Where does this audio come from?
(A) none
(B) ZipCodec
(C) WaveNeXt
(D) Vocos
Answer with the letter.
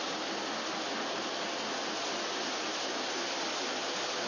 A